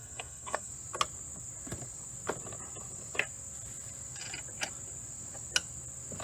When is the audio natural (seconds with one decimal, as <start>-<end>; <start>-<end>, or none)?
0.7-6.2